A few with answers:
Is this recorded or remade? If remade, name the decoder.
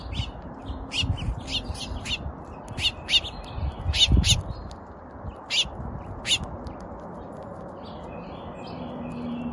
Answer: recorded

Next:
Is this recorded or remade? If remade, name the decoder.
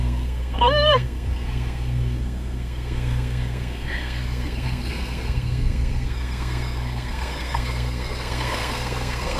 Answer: remade, codec, SNAC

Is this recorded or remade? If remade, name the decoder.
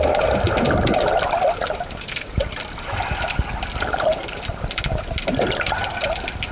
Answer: recorded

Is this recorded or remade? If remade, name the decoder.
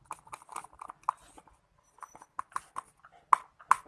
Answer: recorded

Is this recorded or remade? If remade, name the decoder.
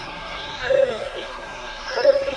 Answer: remade, codec, SNAC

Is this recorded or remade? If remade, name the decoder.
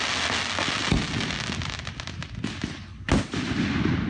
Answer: recorded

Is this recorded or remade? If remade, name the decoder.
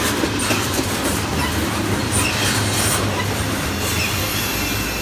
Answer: recorded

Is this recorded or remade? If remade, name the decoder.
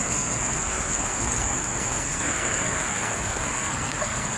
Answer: remade, codec, SNAC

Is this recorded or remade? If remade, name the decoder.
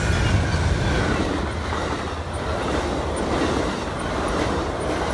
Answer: recorded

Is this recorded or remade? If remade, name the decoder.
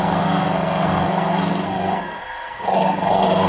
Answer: remade, codec, SNAC